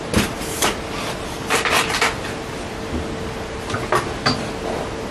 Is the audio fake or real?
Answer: real